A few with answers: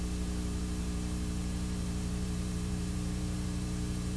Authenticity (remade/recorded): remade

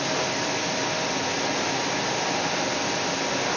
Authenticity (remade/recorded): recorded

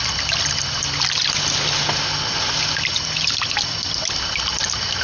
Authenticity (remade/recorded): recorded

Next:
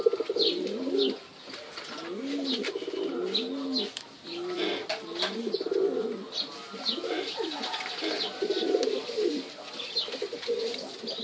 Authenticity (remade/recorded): recorded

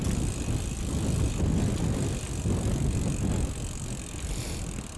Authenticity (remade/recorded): recorded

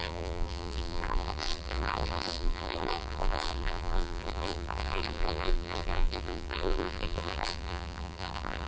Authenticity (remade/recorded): remade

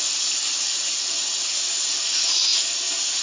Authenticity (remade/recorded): recorded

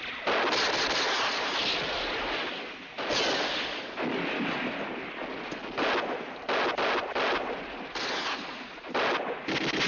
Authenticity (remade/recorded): recorded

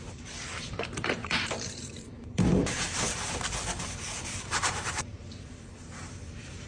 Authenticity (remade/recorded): remade